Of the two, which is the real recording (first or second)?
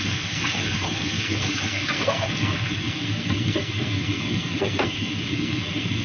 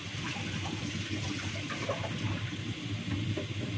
second